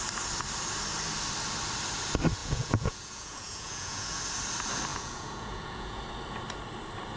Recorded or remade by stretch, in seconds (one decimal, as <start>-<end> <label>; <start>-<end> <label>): 0.0-2.4 recorded; 2.4-4.2 remade; 4.2-4.9 recorded; 4.9-6.0 remade; 6.0-7.2 recorded